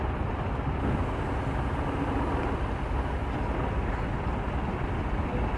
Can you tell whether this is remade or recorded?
recorded